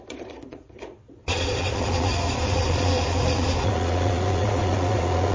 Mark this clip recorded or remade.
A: remade